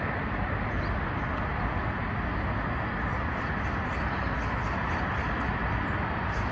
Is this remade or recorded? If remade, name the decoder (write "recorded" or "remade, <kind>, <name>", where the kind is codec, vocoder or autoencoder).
recorded